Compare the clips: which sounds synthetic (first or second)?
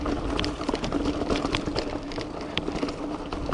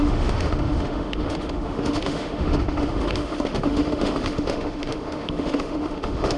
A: second